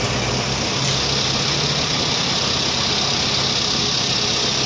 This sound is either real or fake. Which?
real